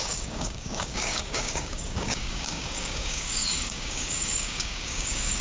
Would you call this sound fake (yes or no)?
yes